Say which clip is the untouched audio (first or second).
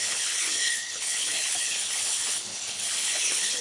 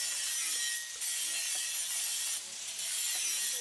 second